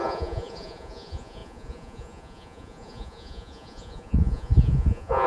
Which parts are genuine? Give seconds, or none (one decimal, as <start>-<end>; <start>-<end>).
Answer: none